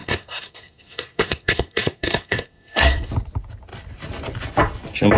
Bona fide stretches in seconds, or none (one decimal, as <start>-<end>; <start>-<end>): 3.1-5.2